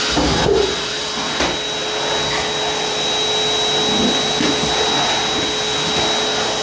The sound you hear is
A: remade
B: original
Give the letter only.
B